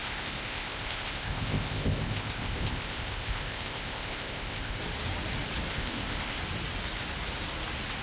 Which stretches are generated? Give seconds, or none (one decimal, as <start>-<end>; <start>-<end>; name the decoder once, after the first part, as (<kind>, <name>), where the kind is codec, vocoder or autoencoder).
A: 0.0-4.8 (codec, ZipCodec); 5.7-6.4